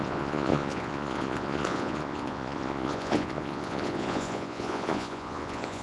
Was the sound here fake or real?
fake